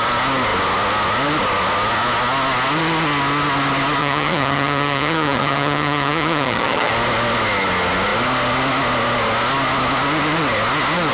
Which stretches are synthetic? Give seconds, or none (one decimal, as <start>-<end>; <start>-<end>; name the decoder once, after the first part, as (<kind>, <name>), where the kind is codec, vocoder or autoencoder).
4.0-6.9 (vocoder, HiFi-GAN)